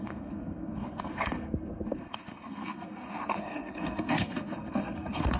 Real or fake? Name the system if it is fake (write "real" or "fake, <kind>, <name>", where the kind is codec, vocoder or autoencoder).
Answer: fake, codec, SNAC